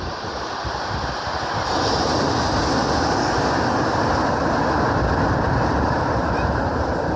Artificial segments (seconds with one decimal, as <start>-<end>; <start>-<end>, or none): 0.0-2.8; 5.5-7.2